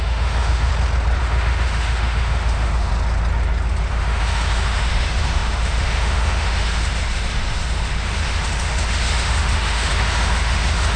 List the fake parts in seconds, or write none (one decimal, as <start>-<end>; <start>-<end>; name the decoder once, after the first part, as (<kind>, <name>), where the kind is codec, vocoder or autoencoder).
0.0-0.7 (autoencoder, DAC-VAE); 1.2-2.9; 3.9-11.0